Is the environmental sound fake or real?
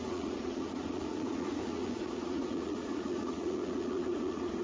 fake